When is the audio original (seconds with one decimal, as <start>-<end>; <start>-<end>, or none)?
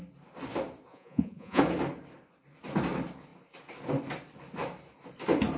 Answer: 0.0-0.9; 1.6-5.6